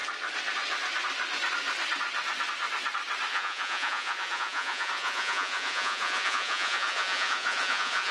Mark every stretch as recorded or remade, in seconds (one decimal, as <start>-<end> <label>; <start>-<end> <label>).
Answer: 0.0-3.3 recorded; 3.3-8.1 remade